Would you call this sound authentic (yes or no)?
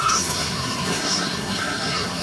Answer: no